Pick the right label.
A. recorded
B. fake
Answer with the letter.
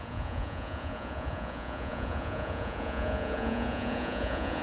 B